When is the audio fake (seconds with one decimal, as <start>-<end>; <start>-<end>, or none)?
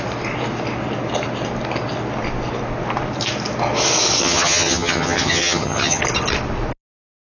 4.2-6.0